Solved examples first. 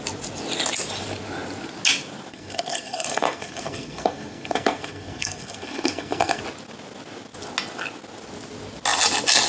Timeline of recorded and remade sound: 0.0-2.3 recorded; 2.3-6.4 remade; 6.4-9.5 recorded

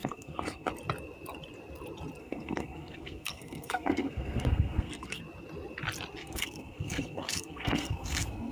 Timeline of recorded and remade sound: 0.0-0.7 remade; 0.7-2.2 recorded; 2.2-5.2 remade; 5.2-6.2 recorded; 6.2-8.5 remade

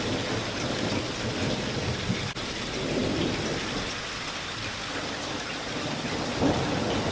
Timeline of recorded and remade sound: 0.0-7.1 recorded

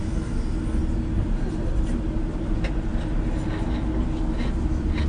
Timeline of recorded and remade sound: 0.0-5.1 recorded

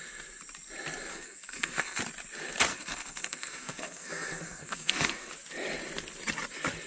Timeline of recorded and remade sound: 0.0-1.1 recorded; 1.1-2.0 remade; 2.0-2.7 recorded; 2.7-5.3 remade; 5.3-6.9 recorded

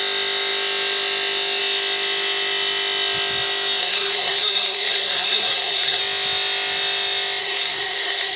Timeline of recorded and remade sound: 0.0-3.8 recorded; 3.8-6.0 remade; 6.0-7.4 recorded; 7.4-8.4 remade

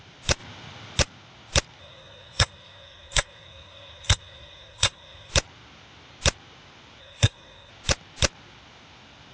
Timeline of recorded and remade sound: 0.0-1.8 recorded; 1.8-5.3 remade; 5.3-7.0 recorded; 7.0-7.7 remade; 7.7-9.3 recorded